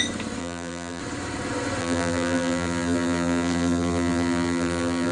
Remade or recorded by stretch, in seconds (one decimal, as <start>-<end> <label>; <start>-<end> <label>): 0.0-0.4 recorded; 0.4-1.0 remade; 1.0-1.8 recorded; 1.8-5.1 remade